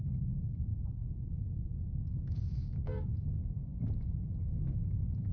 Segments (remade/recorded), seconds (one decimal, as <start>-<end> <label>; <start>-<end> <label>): 0.0-5.3 remade